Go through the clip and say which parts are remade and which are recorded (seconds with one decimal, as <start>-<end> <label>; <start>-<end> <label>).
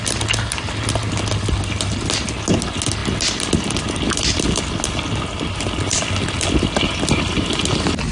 0.0-8.1 recorded